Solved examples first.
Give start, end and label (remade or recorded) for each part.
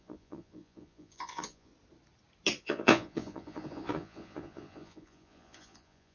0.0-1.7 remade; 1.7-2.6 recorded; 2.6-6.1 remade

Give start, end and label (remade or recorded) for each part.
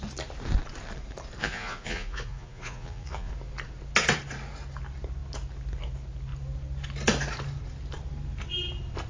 0.0-1.4 recorded; 1.4-3.3 remade; 3.3-9.1 recorded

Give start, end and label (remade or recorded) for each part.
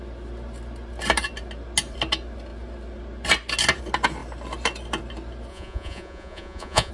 0.0-5.5 recorded; 5.5-6.9 remade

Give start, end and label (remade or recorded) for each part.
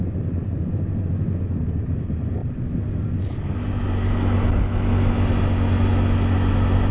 0.0-6.9 recorded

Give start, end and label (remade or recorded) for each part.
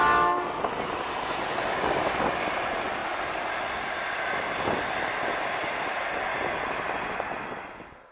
0.0-8.1 recorded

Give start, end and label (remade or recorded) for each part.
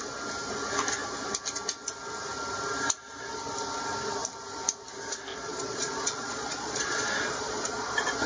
0.0-5.3 recorded; 5.3-8.3 remade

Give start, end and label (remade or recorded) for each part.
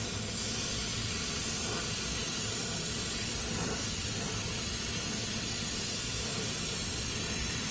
0.0-7.7 recorded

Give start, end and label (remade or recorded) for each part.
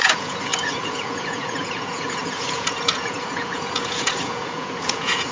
0.0-5.3 remade